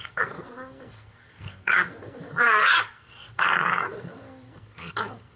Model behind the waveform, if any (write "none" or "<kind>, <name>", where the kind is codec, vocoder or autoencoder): codec, SNAC